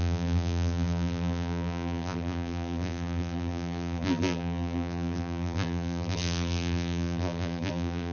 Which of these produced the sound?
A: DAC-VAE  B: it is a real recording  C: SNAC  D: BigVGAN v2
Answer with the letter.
D